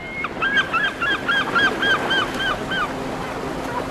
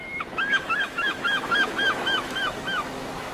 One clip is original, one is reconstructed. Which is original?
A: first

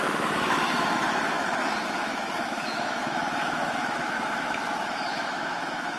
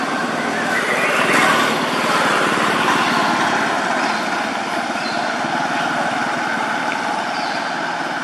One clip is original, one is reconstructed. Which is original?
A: second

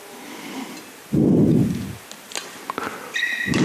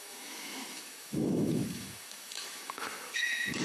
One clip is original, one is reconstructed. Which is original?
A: first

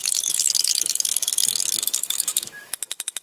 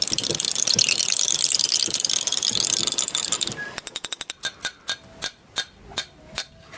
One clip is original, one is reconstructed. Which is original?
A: second